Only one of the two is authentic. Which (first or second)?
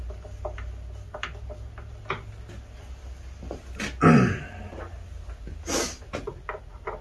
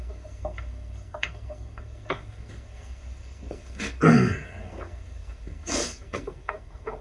first